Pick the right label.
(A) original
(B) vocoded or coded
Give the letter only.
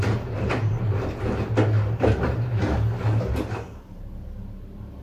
A